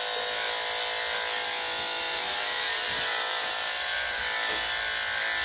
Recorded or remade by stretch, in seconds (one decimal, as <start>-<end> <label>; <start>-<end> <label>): 0.0-2.0 recorded; 2.0-4.2 remade; 4.2-5.4 recorded